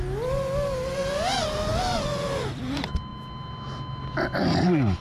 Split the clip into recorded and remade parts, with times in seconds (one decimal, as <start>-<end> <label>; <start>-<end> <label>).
0.0-5.0 recorded